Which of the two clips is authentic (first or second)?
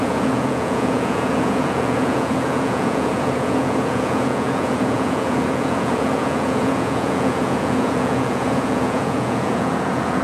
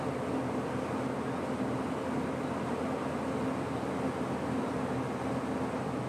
second